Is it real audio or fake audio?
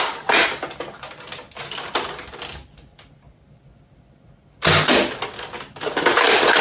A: real